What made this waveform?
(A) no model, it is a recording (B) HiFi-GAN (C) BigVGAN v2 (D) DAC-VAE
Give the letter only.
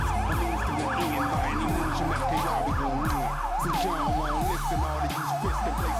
A